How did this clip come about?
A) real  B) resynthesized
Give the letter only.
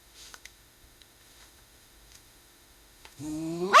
B